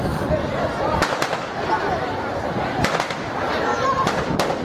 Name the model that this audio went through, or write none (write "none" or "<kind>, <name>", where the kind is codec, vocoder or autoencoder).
vocoder, BigVGAN v2